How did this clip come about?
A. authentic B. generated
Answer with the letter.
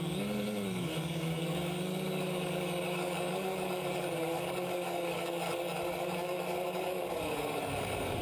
B